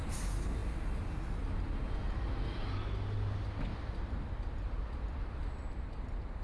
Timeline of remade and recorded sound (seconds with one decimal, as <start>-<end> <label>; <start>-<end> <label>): 0.0-6.4 recorded